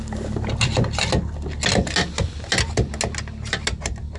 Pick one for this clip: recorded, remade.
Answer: recorded